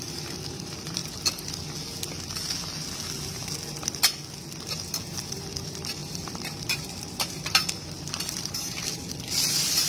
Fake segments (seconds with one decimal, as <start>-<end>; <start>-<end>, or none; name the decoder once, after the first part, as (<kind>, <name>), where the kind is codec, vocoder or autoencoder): 0.0-1.0 (vocoder, BigVGAN v2); 5.3-9.9